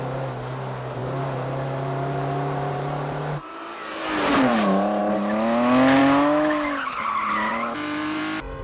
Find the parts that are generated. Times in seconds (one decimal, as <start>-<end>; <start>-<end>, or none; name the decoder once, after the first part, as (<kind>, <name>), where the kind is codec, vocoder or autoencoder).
1.0-5.0 (vocoder, BigVGAN v2); 7.5-8.2